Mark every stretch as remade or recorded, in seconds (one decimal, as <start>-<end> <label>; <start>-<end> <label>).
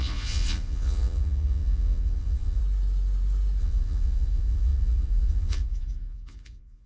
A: 0.0-2.6 remade; 2.6-3.6 recorded; 3.6-6.9 remade